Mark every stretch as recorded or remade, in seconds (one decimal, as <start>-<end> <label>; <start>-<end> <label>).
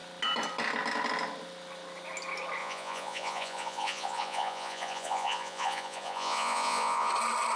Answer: 0.0-2.6 recorded; 2.6-7.1 remade; 7.1-7.6 recorded